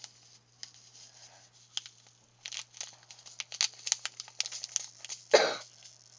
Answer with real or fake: real